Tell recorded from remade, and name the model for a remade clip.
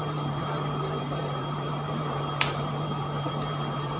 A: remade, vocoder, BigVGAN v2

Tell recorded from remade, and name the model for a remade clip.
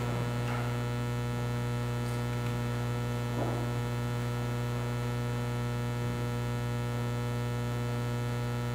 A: recorded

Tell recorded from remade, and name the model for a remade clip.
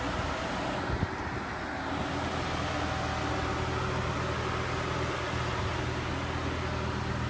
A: recorded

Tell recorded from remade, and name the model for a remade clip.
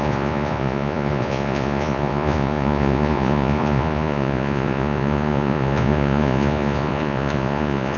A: remade, vocoder, Vocos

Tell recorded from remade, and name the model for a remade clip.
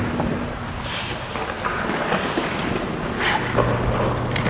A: recorded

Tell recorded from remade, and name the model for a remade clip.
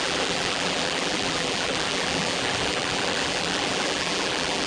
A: remade, vocoder, BigVGAN v2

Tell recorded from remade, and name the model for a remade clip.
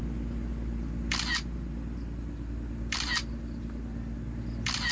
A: recorded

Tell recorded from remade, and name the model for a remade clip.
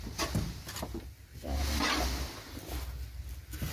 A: recorded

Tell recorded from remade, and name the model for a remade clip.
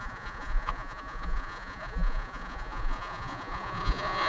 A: remade, vocoder, Vocos